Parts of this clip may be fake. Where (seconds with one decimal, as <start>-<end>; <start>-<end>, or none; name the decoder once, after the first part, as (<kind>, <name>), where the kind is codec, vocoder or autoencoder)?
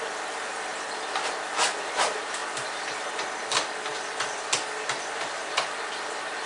none